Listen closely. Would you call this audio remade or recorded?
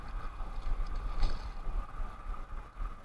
recorded